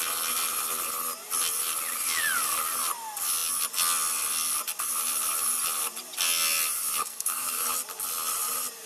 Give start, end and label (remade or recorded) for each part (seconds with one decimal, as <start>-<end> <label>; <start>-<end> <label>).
0.0-7.0 recorded; 7.0-7.6 remade; 7.6-8.9 recorded